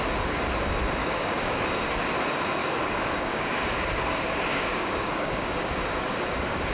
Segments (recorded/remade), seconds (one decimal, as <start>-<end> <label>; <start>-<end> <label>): 0.0-1.0 recorded; 1.0-1.6 remade; 1.6-2.6 recorded; 2.6-6.7 remade